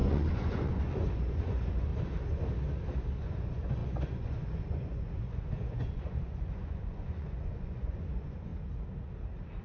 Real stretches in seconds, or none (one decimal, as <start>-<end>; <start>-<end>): 1.9-3.2; 8.5-9.6